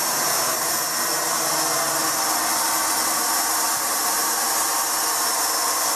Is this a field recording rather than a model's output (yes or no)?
yes